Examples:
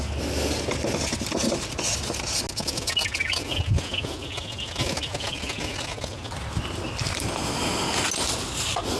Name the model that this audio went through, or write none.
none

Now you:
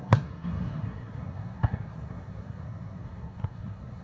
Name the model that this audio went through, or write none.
codec, SNAC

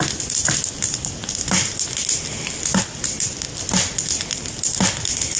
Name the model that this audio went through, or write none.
none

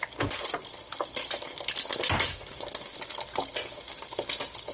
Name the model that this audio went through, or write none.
none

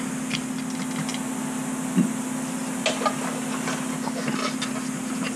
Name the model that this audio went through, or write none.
none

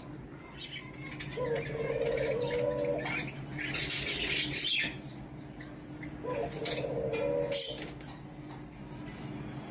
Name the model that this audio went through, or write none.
none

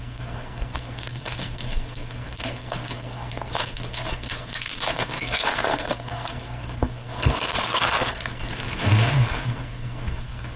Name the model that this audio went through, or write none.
codec, SNAC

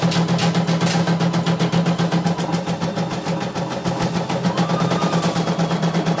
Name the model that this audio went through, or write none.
none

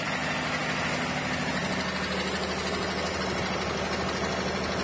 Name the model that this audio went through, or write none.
none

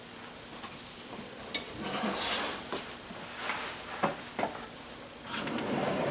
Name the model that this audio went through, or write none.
none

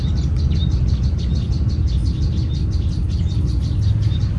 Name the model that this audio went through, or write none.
none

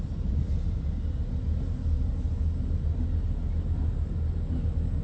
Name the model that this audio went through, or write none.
none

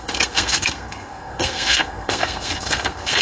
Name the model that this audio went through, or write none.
codec, SNAC